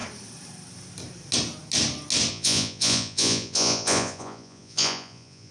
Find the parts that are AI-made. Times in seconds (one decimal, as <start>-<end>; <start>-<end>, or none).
2.3-5.5